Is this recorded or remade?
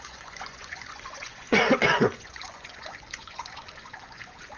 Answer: remade